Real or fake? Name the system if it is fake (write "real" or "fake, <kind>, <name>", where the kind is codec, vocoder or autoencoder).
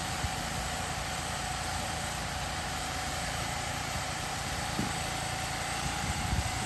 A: fake, vocoder, BigVGAN v2